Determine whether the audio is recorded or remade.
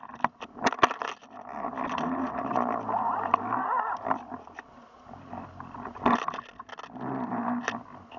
recorded